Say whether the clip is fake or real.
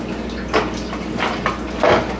real